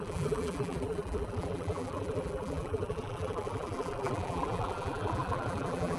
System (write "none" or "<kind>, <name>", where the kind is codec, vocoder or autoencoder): vocoder, BigVGAN v2